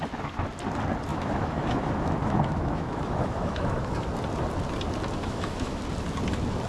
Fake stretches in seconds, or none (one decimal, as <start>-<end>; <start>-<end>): 1.1-4.1; 5.2-5.8